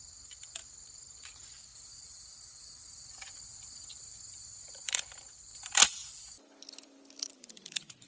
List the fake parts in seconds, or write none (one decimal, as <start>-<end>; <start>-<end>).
0.0-2.6; 4.0-6.0; 7.2-8.1